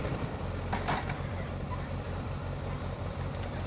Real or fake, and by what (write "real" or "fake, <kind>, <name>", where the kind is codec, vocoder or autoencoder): real